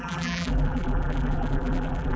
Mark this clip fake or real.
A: fake